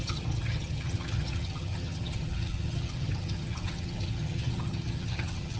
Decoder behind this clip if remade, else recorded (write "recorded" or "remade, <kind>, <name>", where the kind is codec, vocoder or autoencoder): remade, vocoder, HiFi-GAN